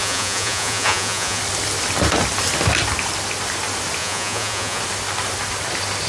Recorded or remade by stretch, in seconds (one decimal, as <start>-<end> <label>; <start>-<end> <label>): 0.0-1.4 remade; 1.4-4.0 recorded; 4.0-4.8 remade; 4.8-6.1 recorded